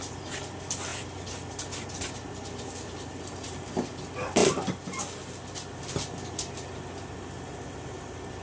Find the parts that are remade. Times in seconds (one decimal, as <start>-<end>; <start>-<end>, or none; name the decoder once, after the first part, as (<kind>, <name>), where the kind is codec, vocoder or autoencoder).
none